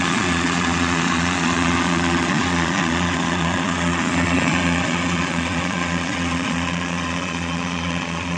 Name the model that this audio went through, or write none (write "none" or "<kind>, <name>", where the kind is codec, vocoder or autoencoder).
vocoder, Vocos